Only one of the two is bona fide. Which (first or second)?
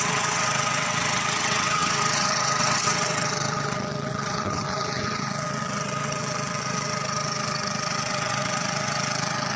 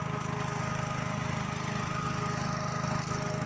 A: second